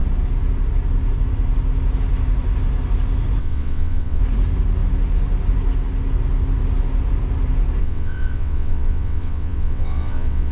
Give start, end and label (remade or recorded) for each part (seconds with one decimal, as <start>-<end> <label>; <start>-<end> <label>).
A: 0.0-3.4 recorded; 3.4-4.2 remade; 4.2-7.8 recorded; 7.8-10.5 remade